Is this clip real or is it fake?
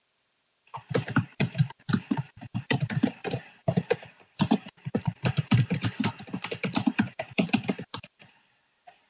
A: fake